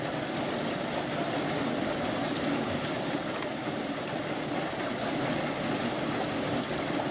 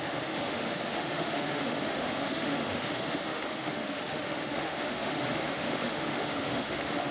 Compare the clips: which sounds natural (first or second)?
first